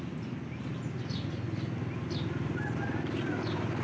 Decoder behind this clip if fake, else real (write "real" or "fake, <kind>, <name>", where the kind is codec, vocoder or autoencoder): real